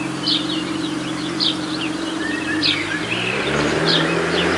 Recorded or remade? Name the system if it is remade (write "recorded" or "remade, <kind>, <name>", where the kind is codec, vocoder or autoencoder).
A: remade, vocoder, BigVGAN v2